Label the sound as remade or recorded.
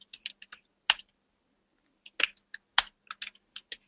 recorded